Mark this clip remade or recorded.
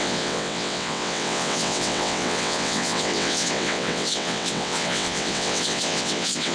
remade